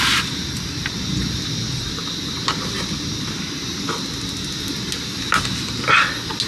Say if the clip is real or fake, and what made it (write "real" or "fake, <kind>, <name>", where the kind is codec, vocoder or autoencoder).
real